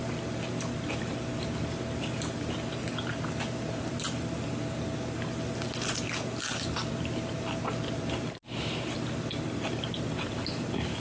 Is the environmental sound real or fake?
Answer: real